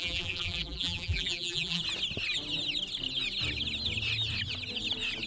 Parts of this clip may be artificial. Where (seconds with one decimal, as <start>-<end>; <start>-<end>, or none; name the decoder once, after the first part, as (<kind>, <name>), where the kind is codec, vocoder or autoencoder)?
0.0-1.8 (vocoder, BigVGAN v2)